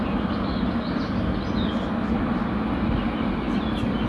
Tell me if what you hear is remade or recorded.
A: recorded